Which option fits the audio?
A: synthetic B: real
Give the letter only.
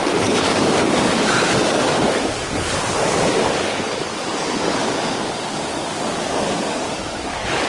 A